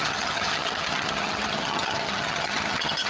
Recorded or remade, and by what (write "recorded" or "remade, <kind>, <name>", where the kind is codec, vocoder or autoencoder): remade, vocoder, HiFi-GAN